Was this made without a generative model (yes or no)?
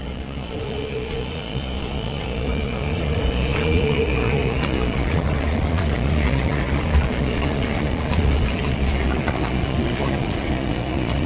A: no